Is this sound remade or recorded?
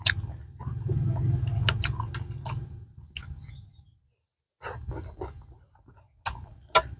recorded